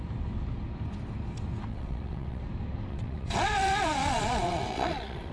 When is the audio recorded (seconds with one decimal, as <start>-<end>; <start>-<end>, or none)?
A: 0.0-1.7; 2.4-2.9